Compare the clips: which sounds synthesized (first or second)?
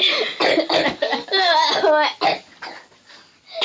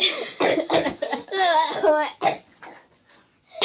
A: second